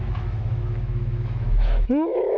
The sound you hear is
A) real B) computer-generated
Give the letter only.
B